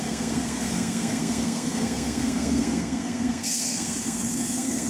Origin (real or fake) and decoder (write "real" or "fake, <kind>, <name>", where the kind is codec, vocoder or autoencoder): fake, codec, SNAC